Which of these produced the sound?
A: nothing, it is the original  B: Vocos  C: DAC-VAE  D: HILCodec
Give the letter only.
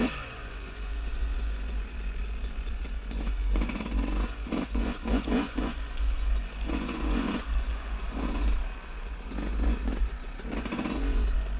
B